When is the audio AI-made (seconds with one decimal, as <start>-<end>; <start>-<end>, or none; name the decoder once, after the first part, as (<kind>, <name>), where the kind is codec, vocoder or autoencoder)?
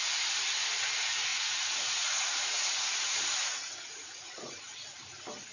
1.3-4.6 (vocoder, Vocos)